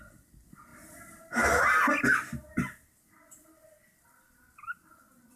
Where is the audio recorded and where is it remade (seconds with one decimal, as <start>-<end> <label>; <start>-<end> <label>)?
0.0-5.4 recorded